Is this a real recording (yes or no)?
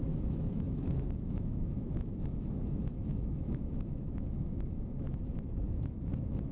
no